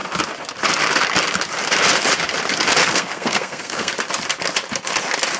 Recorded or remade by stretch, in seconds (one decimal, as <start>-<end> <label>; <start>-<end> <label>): 0.0-2.8 recorded; 2.8-3.9 remade; 3.9-5.4 recorded